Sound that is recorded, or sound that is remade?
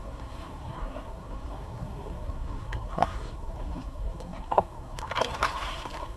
remade